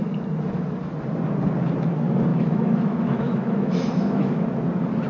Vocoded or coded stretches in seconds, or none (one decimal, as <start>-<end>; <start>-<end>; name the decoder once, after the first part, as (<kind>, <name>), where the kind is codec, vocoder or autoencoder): 2.3-4.4 (autoencoder, DAC-VAE)